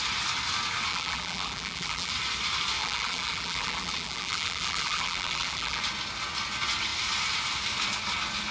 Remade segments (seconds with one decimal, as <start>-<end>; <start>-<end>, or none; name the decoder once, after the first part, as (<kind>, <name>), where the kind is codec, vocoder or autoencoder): 0.9-2.1 (vocoder, BigVGAN v2); 2.8-5.8